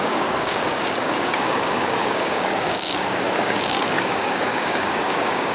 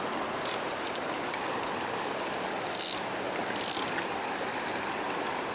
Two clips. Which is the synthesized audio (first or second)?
first